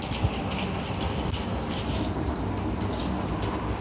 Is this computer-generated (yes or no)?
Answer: no